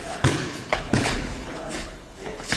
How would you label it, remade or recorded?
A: remade